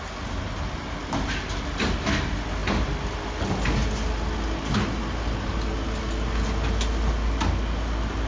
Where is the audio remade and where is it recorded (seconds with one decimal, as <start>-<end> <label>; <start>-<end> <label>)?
0.0-8.3 recorded